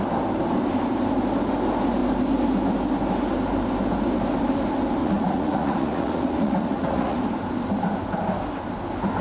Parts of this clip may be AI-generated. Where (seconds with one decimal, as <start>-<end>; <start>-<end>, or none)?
5.0-7.2